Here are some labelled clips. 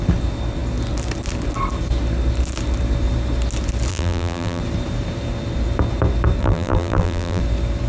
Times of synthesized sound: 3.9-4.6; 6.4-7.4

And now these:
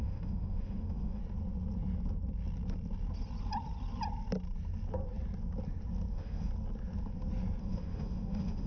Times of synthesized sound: 0.0-1.2; 6.1-6.5; 7.6-8.7